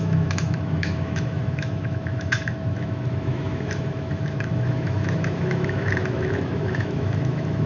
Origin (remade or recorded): remade